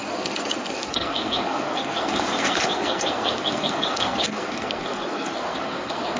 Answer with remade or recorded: remade